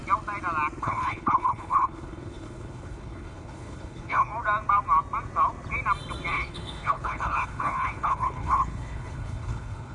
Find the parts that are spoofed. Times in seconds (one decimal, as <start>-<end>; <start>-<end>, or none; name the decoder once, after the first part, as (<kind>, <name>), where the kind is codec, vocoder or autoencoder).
0.8-4.3 (codec, HILCodec); 6.3-9.9